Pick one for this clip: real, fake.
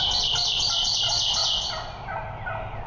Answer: real